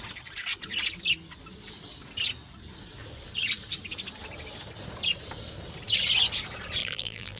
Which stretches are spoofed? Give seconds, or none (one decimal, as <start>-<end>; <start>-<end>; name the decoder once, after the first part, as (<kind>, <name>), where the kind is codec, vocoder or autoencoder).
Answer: 6.8-7.4 (vocoder, BigVGAN v2)